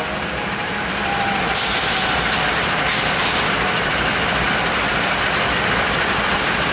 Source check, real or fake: fake